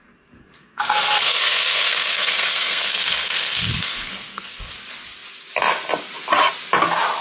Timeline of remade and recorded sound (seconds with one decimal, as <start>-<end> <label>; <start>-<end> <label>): 0.0-0.4 recorded; 0.4-4.7 remade; 4.7-7.2 recorded